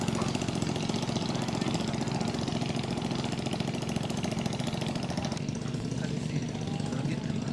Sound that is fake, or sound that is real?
real